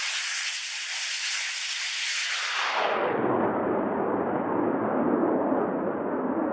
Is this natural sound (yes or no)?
yes